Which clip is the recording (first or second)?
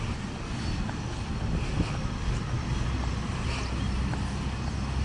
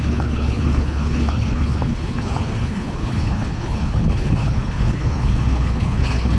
first